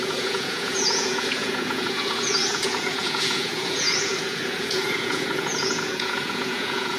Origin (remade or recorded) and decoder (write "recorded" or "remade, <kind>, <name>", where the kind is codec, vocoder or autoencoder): remade, vocoder, Vocos